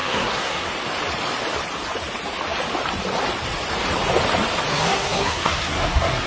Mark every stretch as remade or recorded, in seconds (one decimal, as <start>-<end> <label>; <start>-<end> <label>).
0.0-0.7 remade; 0.7-4.7 recorded; 4.7-6.3 remade